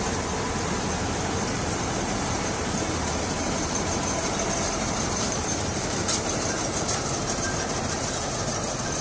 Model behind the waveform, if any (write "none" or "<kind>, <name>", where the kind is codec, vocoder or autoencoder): vocoder, BigVGAN v2